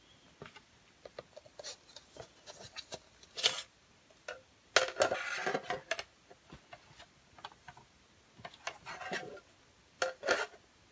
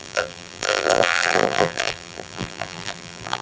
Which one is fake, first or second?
second